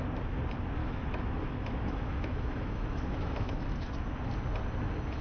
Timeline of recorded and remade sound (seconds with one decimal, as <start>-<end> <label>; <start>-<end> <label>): 0.0-0.8 recorded; 0.8-3.9 remade; 3.9-5.2 recorded